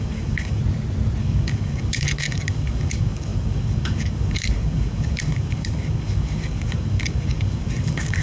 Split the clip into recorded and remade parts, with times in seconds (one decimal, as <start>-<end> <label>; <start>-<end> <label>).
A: 0.0-0.6 remade; 0.6-1.2 recorded; 1.2-8.2 remade